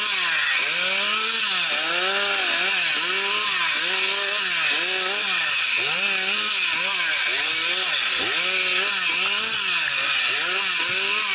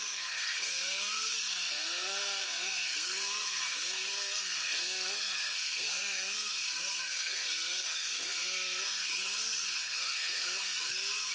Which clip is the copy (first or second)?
second